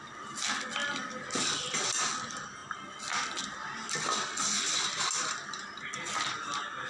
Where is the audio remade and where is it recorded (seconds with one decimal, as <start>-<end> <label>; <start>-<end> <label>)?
0.0-6.9 recorded